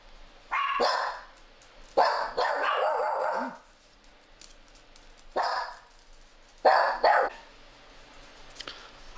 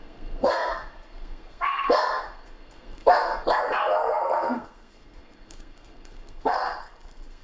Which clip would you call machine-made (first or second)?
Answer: second